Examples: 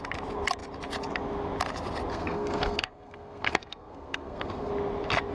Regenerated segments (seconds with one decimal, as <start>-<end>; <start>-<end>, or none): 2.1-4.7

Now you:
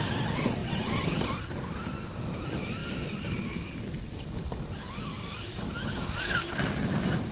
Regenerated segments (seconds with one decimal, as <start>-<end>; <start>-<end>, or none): none

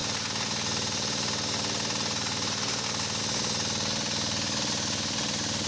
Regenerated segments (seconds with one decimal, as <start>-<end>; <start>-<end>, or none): none

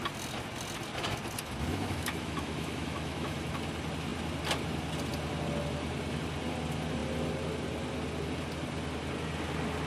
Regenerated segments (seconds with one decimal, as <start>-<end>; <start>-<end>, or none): 1.7-3.5

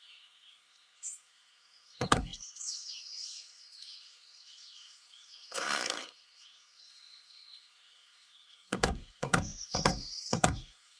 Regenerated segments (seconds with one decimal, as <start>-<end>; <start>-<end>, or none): 0.0-11.0

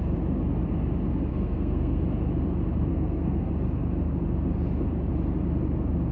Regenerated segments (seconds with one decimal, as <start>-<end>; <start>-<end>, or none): 1.3-2.0; 2.9-3.5

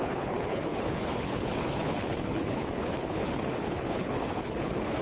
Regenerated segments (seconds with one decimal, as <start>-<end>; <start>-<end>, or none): 0.0-5.0

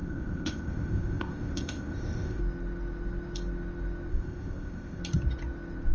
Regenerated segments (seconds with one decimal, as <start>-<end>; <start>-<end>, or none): 0.0-2.4; 4.1-5.0